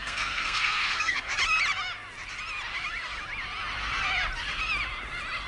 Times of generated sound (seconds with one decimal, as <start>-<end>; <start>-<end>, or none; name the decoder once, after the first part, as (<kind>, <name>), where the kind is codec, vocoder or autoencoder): 0.0-1.3 (codec, SNAC)